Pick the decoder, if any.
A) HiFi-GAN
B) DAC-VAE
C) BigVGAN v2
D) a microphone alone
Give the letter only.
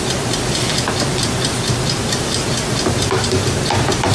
D